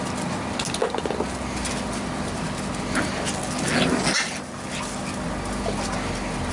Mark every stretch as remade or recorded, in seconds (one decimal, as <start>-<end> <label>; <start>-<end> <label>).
0.0-6.5 recorded